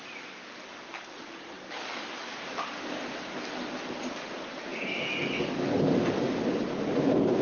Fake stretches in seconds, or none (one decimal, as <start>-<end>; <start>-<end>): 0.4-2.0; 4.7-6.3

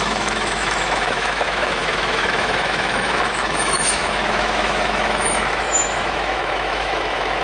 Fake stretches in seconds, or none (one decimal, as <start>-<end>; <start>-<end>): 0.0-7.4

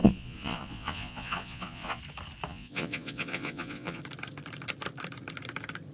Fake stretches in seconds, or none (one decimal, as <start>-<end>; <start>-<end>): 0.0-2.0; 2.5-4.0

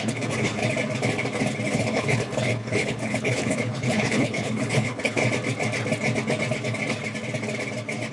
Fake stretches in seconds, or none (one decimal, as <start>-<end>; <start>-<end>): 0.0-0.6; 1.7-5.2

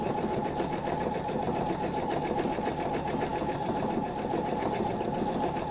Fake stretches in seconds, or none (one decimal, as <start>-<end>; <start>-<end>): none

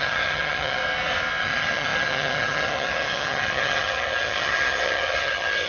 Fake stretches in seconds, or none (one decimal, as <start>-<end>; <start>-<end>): 0.0-0.8; 1.4-5.7